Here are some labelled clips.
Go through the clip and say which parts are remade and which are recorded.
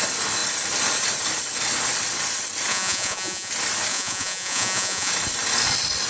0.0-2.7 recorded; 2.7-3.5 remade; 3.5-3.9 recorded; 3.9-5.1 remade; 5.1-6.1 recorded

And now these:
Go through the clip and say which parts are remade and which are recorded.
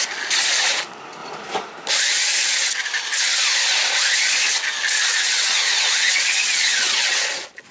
0.0-5.3 recorded; 5.3-7.3 remade; 7.3-7.7 recorded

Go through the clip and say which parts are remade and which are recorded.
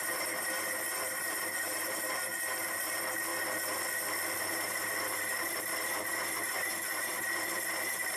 0.0-3.3 remade; 3.3-4.4 recorded; 4.4-8.2 remade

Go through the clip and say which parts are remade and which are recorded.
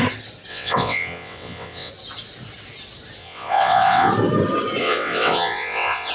0.0-0.5 recorded; 0.5-1.9 remade; 1.9-3.2 recorded; 3.2-4.1 remade; 4.1-4.8 recorded; 4.8-6.1 remade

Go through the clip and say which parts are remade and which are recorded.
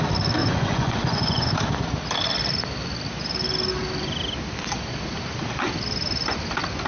0.0-0.4 recorded; 0.4-1.5 remade; 1.5-6.9 recorded